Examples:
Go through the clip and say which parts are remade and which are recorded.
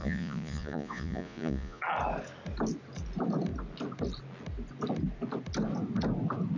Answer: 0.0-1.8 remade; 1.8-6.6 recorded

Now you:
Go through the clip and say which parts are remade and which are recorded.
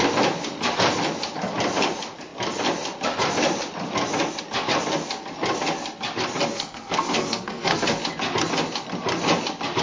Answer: 0.0-6.5 recorded; 6.5-8.0 remade; 8.0-9.8 recorded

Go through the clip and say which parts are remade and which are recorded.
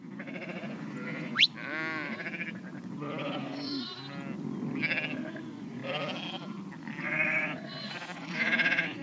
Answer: 0.0-1.5 remade; 1.5-3.2 recorded; 3.2-3.9 remade; 3.9-5.3 recorded; 5.3-5.8 remade; 5.8-7.0 recorded; 7.0-9.0 remade